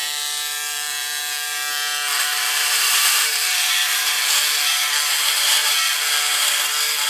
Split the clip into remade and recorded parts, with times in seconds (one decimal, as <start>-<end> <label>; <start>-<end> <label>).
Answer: 0.0-4.3 remade; 4.3-5.6 recorded; 5.6-6.3 remade; 6.3-7.1 recorded